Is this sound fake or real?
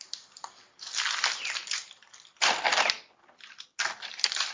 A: real